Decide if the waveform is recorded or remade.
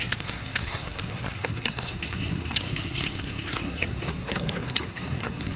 remade